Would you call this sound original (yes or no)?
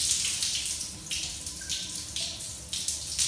yes